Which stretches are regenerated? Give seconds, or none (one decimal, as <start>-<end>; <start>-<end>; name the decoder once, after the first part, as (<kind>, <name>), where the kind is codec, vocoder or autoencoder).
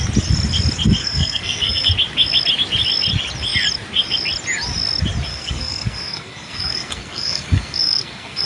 1.0-1.9 (codec, SNAC); 5.3-8.5